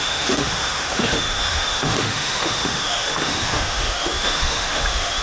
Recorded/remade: remade